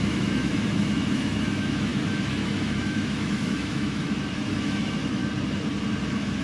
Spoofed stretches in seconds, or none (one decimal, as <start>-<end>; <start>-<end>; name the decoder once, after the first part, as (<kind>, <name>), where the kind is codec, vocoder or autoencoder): 0.0-5.2 (autoencoder, DAC-VAE); 6.0-6.4